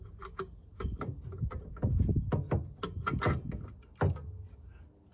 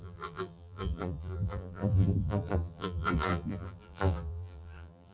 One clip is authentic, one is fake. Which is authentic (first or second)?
first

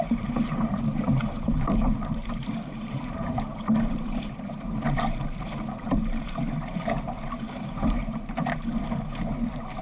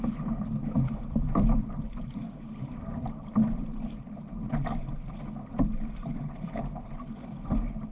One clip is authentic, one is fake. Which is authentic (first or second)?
second